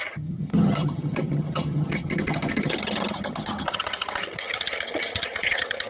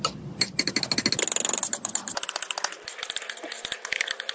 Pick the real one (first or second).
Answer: second